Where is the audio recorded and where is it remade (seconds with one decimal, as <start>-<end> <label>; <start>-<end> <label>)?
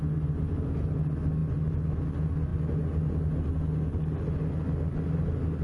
0.0-5.6 recorded